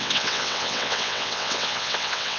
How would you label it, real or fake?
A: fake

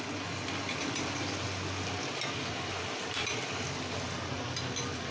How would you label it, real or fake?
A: real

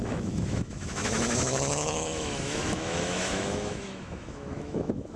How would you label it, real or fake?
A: fake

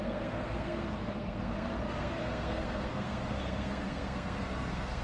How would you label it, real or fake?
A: fake